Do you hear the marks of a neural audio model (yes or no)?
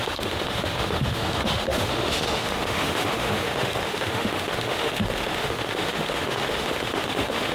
yes